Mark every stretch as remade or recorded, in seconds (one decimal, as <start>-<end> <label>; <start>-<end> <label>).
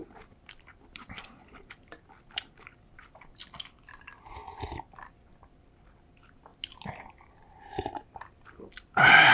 0.0-4.4 remade; 4.4-5.3 recorded; 5.3-6.5 remade; 6.5-7.1 recorded; 7.1-9.3 remade